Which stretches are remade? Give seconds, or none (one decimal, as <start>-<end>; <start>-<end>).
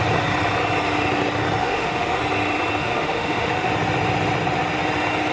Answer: 1.6-2.2; 2.8-3.7